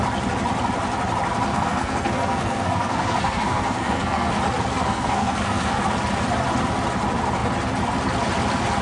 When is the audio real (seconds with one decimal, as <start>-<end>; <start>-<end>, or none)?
0.0-1.5; 4.3-4.7; 5.8-8.8